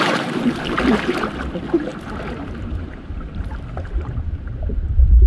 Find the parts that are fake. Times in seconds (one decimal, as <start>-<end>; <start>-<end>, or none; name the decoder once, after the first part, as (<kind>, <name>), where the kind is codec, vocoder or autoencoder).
0.0-5.3 (vocoder, BigVGAN v2)